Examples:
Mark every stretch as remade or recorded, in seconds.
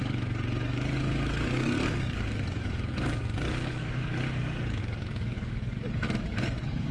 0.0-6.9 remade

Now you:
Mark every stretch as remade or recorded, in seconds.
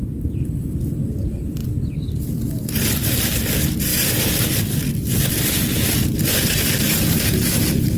0.0-8.0 remade